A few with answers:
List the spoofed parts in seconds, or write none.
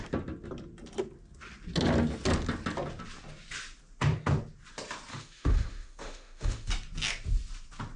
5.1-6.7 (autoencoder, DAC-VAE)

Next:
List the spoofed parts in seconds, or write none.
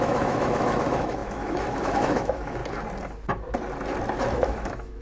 0.0-2.6 (autoencoder, DAC-VAE); 4.3-5.0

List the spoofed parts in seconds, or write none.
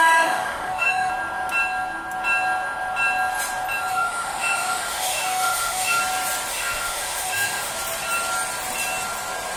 0.0-1.1 (autoencoder, DAC-VAE); 3.9-6.0; 6.5-7.7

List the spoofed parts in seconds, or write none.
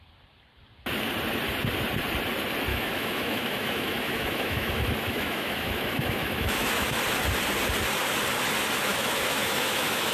2.7-7.0 (autoencoder, DAC-VAE); 8.9-10.1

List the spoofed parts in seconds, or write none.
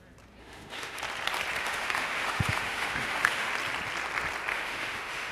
0.4-1.0 (autoencoder, DAC-VAE); 1.6-3.5; 4.5-5.3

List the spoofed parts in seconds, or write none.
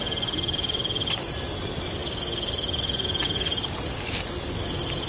none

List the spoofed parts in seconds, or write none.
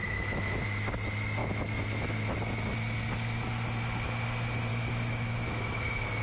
0.0-0.6 (autoencoder, DAC-VAE); 1.4-2.4; 4.7-6.2